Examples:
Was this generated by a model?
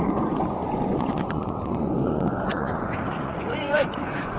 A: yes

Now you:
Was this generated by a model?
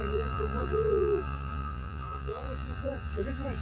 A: yes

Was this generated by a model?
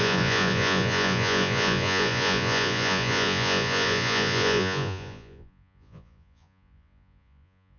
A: yes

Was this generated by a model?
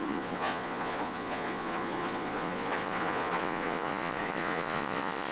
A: yes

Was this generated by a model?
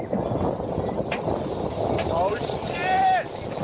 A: no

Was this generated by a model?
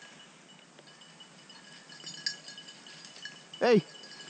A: no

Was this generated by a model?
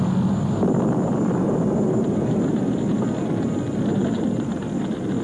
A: no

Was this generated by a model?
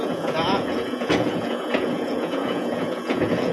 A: yes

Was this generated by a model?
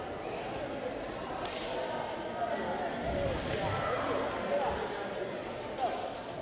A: no